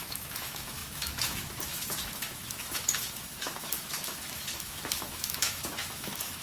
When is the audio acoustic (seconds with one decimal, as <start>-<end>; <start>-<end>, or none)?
none